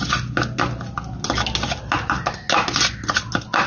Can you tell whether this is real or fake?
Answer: real